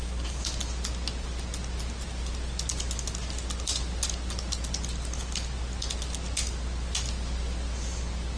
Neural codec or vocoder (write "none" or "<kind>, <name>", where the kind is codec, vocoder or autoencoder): none